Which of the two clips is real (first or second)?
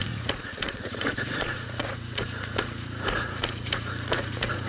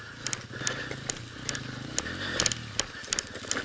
second